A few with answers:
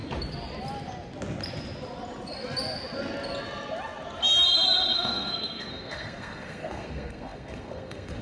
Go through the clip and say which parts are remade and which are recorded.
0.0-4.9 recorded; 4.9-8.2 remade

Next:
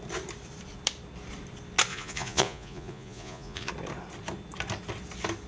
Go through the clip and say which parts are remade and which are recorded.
0.0-1.9 recorded; 1.9-3.7 remade; 3.7-5.5 recorded